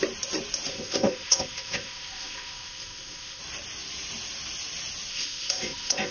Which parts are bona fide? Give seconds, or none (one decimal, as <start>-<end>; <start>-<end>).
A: 0.0-0.7; 3.4-5.1